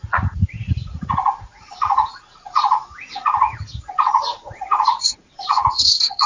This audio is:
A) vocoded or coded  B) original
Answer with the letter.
A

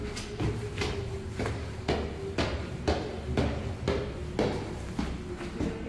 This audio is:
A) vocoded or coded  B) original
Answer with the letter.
B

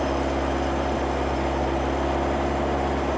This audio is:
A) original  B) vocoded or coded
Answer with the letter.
A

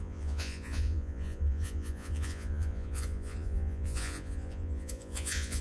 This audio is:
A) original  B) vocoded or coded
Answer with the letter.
B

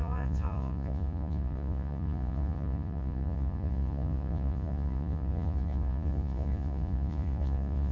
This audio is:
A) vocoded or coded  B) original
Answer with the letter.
A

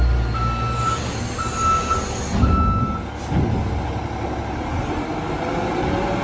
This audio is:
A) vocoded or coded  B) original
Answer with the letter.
B